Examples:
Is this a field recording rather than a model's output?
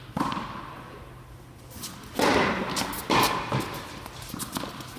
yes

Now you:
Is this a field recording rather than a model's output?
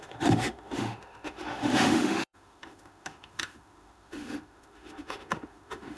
no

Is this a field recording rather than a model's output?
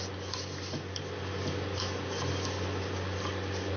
yes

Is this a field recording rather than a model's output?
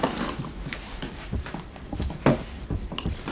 yes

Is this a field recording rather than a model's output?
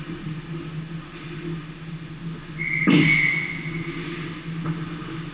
yes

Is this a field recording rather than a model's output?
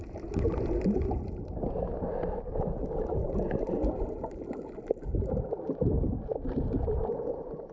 no